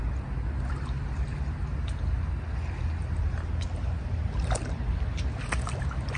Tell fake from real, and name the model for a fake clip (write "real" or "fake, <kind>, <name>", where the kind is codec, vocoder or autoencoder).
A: real